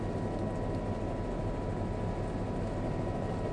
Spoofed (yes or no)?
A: no